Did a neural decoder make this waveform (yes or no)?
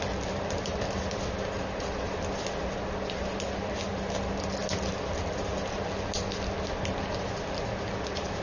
no